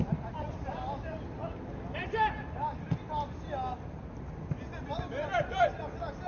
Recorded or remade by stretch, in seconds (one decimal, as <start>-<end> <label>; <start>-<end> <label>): 0.0-6.3 recorded